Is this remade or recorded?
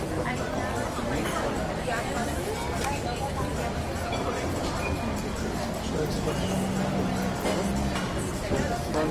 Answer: recorded